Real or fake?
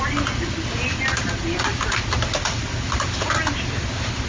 real